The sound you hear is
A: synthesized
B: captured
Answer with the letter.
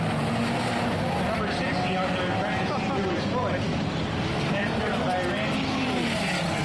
B